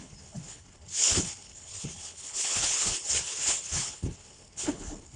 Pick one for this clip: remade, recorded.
remade